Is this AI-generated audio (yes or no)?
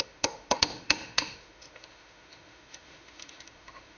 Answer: yes